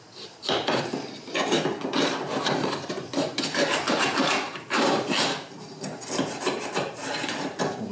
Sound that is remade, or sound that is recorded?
remade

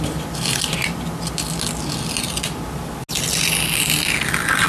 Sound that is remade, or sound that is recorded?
recorded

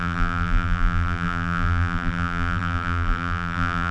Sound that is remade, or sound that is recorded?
remade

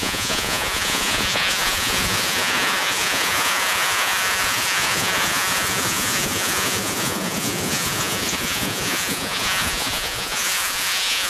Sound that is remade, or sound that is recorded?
remade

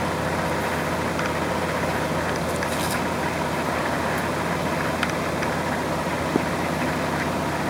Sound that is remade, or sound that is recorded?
recorded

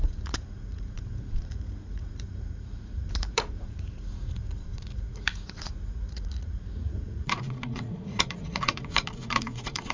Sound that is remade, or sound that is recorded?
remade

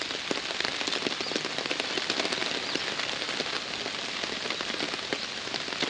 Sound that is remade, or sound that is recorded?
recorded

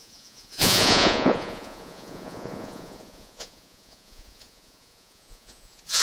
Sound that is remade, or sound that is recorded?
remade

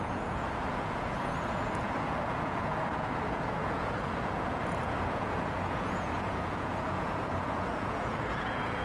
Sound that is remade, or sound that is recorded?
remade